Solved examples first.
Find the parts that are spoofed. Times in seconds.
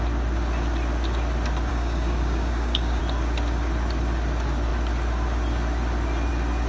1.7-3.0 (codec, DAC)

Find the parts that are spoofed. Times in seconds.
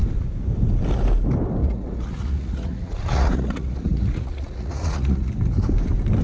1.6-5.3 (vocoder, Vocos)